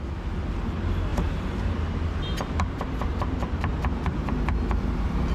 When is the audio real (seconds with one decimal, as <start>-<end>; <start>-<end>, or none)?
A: 0.0-1.1; 4.3-5.3